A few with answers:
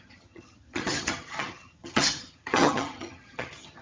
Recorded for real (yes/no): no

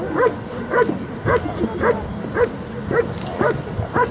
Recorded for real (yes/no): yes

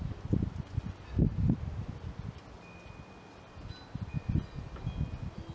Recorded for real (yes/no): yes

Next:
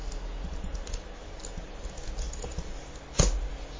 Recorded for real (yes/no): yes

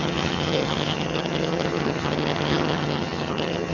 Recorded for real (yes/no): no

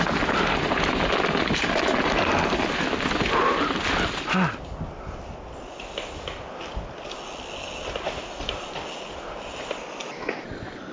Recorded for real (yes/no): yes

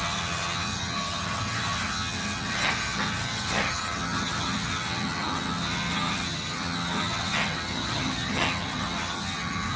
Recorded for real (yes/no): no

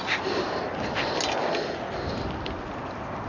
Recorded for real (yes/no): yes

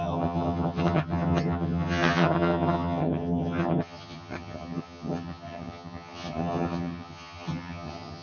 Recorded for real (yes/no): no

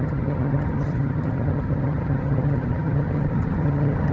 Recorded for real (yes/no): no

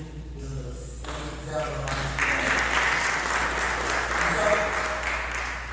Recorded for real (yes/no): yes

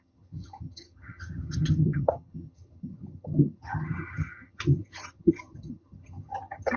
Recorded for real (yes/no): no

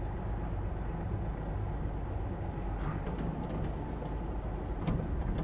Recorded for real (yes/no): yes